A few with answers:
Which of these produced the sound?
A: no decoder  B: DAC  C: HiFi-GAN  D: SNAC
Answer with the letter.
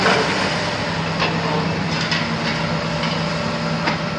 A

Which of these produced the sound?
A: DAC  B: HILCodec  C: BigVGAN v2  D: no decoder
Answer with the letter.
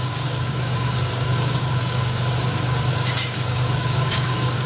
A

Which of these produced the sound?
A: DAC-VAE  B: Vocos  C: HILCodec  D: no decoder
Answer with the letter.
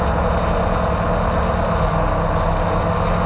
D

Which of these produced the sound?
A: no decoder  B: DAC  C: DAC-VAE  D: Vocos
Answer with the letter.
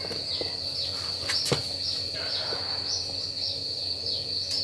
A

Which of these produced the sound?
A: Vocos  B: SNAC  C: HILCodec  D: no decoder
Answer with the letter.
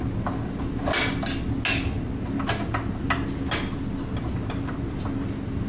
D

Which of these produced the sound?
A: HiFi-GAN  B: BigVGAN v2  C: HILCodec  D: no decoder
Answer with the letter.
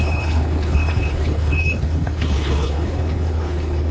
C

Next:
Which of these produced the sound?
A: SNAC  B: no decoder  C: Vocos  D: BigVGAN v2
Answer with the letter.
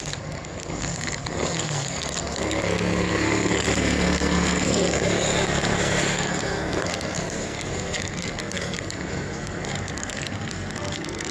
A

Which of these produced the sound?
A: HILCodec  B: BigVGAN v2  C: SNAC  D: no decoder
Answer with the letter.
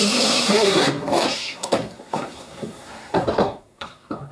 C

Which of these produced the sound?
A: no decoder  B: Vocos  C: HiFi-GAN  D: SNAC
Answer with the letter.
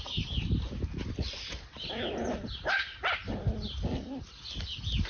A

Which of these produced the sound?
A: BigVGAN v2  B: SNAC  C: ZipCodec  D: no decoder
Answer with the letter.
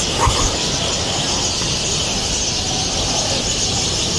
D